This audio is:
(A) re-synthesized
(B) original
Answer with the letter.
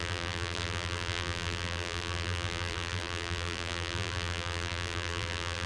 A